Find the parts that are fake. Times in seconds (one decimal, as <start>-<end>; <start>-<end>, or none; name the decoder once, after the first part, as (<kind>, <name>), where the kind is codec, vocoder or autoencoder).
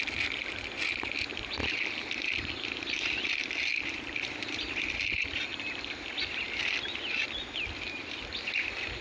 none